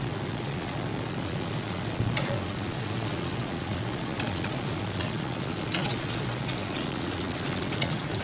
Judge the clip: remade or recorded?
remade